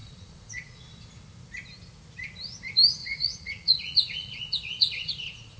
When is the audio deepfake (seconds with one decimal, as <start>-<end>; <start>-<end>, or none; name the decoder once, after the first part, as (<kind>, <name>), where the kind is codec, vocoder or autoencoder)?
0.0-0.8 (vocoder, Vocos); 3.0-5.6